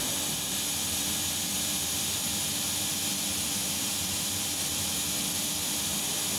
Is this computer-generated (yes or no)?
yes